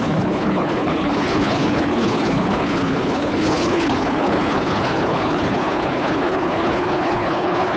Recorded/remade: remade